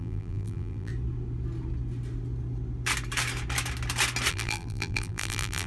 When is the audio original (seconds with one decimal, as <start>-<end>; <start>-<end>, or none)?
0.9-4.3